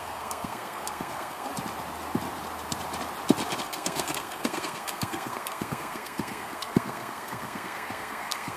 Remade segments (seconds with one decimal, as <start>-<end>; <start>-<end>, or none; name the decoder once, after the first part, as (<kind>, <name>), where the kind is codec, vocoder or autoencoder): 0.0-1.5 (codec, SNAC); 3.6-8.6